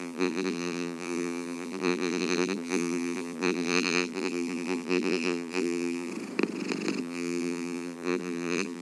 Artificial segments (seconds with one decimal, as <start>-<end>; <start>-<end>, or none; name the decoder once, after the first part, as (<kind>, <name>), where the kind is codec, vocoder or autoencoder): 0.0-6.1 (vocoder, BigVGAN v2); 7.0-8.8